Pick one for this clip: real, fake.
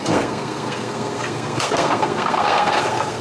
fake